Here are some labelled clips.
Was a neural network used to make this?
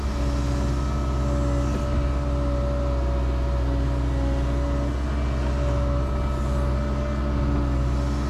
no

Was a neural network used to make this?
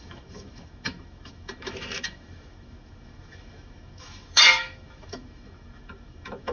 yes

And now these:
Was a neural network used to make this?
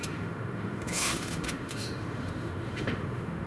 yes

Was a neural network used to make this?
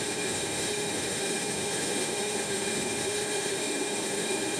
yes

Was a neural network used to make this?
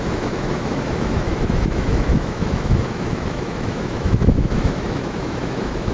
yes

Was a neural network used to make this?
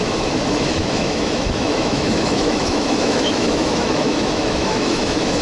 yes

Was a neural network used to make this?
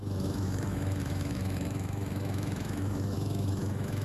yes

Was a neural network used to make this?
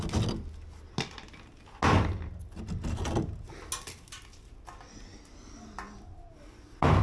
no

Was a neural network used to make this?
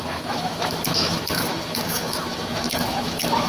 yes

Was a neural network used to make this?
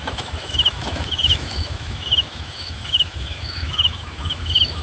yes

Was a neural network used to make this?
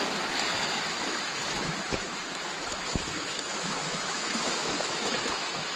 yes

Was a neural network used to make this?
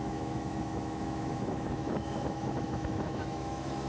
yes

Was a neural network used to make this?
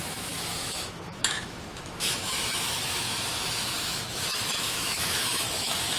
yes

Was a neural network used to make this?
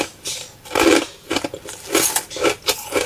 no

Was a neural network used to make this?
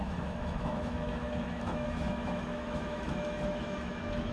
yes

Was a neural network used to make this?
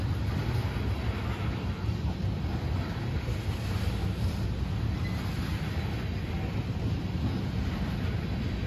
no